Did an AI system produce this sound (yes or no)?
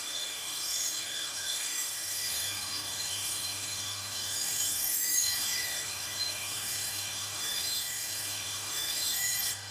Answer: yes